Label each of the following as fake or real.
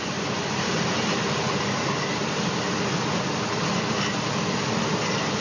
real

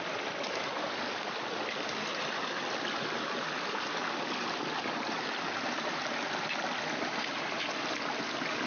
real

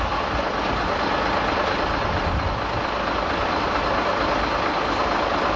real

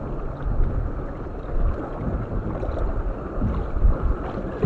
real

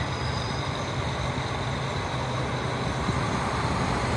real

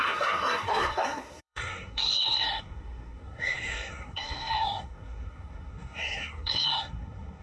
fake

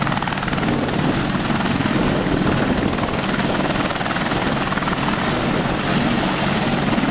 real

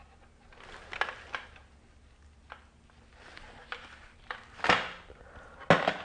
real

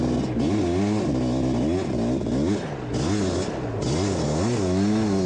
real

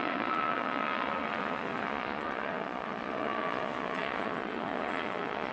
fake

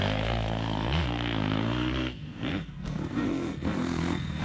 fake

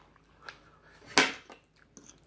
real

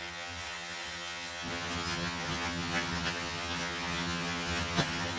fake